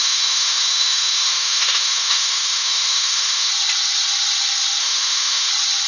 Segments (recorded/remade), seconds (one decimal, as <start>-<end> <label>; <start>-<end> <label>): 0.0-3.5 remade; 3.5-4.8 recorded; 4.8-5.5 remade; 5.5-5.9 recorded